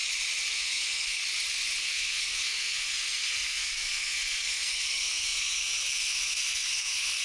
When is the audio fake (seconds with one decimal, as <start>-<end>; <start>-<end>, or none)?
0.5-1.2; 1.8-7.2